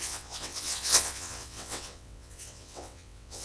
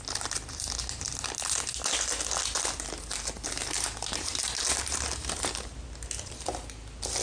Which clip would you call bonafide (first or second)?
second